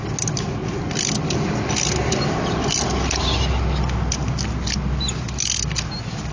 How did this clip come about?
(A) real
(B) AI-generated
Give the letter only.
A